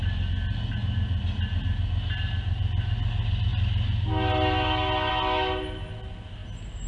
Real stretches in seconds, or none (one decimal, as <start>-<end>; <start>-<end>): 0.0-6.9

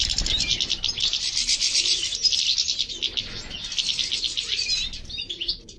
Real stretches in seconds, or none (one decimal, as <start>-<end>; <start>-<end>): 0.5-1.0; 2.2-5.3

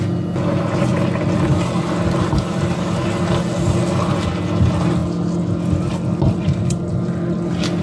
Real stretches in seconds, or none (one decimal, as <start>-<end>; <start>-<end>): 0.0-7.8

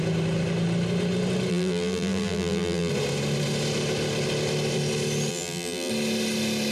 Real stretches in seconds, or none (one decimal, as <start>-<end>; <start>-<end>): 0.0-1.5; 2.9-5.3; 5.9-6.7

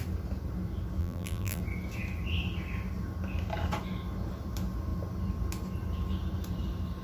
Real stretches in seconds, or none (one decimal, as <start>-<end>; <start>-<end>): 0.0-1.0; 1.6-7.0